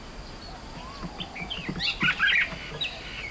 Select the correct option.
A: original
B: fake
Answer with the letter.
A